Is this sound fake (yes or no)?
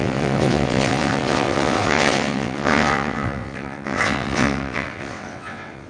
yes